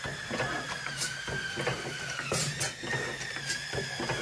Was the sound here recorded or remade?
recorded